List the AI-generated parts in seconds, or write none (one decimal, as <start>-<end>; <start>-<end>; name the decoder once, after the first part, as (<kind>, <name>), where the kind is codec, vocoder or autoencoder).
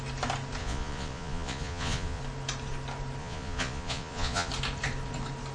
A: 0.6-2.2 (vocoder, Vocos); 3.2-4.5